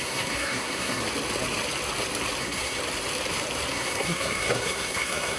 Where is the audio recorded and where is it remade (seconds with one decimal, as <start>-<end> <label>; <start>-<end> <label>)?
0.0-1.0 remade; 1.0-2.4 recorded; 2.4-2.8 remade; 2.8-3.7 recorded; 3.7-5.4 remade